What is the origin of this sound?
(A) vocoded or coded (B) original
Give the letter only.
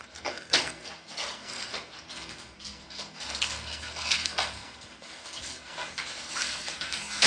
A